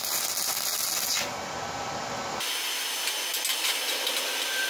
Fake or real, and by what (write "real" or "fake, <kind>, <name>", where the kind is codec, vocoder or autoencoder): real